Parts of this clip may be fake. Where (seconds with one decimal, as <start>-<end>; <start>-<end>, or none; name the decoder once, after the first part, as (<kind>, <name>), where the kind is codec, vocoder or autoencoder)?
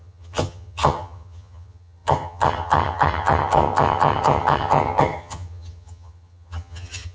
0.0-7.1 (vocoder, HiFi-GAN)